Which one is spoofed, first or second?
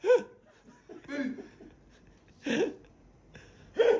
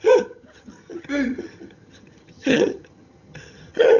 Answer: second